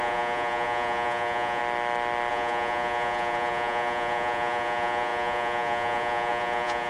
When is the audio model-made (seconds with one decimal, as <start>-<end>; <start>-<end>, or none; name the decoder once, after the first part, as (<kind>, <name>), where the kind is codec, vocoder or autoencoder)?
0.0-1.6 (vocoder, Vocos); 2.3-6.9